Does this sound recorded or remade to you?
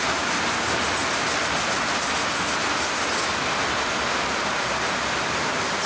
recorded